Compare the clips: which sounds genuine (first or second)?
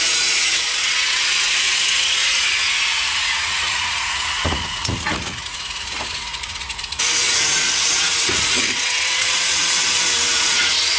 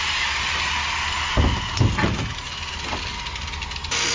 second